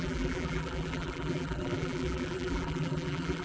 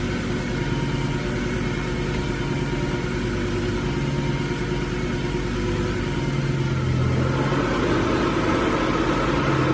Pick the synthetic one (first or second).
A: first